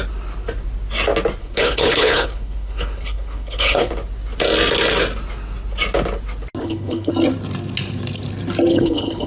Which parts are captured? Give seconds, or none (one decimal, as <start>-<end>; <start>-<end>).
0.0-1.4; 3.9-6.6; 7.1-8.7